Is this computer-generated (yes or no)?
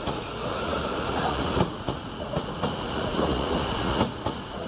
yes